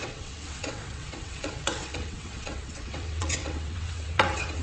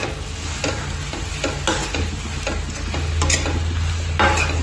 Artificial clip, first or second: first